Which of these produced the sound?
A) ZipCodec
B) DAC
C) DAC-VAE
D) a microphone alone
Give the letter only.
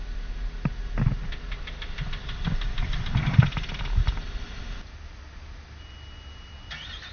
D